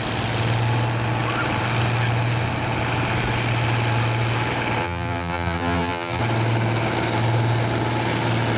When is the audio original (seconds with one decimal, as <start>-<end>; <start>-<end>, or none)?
0.0-4.8; 6.2-8.6